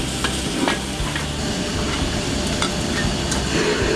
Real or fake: real